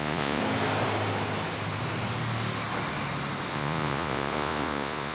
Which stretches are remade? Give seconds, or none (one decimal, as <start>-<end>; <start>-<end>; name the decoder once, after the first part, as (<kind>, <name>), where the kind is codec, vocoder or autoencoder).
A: 0.0-0.4 (vocoder, Vocos); 3.5-5.1

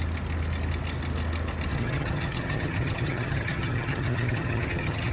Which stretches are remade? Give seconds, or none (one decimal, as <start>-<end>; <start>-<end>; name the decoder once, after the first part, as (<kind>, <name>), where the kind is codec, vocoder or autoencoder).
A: 1.7-5.1 (vocoder, HiFi-GAN)

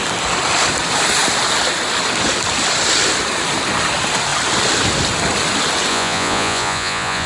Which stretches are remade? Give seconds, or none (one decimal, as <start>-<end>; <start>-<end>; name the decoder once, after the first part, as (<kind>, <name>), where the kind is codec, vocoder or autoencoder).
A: 5.9-7.3 (vocoder, Vocos)

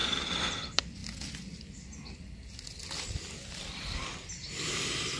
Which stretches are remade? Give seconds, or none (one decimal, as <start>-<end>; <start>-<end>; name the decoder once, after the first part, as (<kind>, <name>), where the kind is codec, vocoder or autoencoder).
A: 0.6-1.0 (vocoder, BigVGAN v2); 3.5-5.2

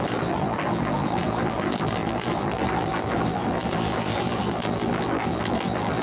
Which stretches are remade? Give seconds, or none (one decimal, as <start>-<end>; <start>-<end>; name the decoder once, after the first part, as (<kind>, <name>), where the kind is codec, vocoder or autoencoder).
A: 0.0-6.0 (vocoder, BigVGAN v2)

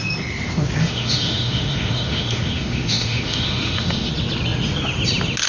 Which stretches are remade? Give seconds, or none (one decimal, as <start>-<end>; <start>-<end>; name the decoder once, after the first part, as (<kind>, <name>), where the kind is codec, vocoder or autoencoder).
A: 0.8-4.1 (autoencoder, DAC-VAE)

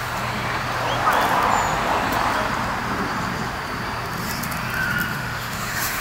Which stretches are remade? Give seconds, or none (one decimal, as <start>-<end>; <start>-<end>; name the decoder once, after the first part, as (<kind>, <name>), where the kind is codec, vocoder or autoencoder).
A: 5.1-6.0 (autoencoder, DAC-VAE)